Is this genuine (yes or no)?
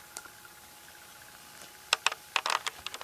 yes